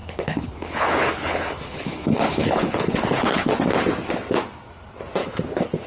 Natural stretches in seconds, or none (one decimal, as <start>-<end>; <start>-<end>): 3.5-5.2